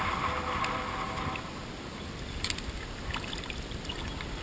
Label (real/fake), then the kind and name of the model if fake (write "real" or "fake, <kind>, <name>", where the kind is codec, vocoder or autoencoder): real